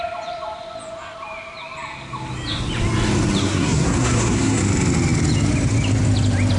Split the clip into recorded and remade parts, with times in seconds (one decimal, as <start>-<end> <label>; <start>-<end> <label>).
0.0-3.4 recorded; 3.4-4.6 remade; 4.6-6.6 recorded

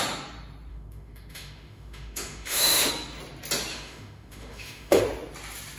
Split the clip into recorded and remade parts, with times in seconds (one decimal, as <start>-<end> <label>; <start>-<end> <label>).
0.0-0.7 recorded; 0.7-2.9 remade; 2.9-3.7 recorded; 3.7-5.0 remade; 5.0-5.8 recorded